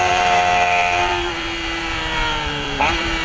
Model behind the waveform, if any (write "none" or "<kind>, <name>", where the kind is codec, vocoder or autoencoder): vocoder, BigVGAN v2